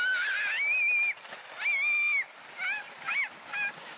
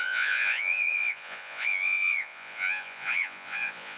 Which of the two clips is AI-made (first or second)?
second